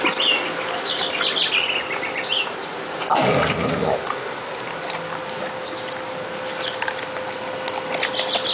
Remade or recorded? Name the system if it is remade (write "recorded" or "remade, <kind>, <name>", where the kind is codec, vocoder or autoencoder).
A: recorded